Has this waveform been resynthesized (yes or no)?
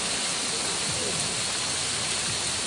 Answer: no